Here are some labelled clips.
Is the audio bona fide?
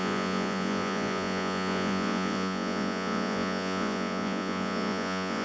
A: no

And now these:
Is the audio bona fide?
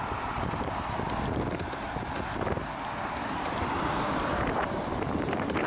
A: yes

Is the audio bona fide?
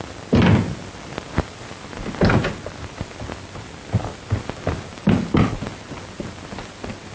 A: yes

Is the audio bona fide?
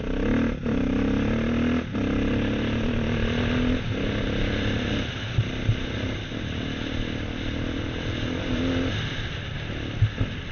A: yes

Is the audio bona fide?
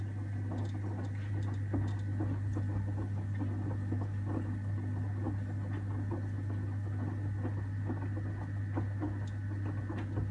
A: yes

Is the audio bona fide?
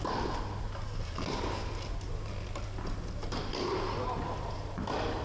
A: yes